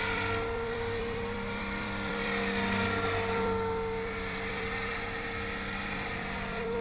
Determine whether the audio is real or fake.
fake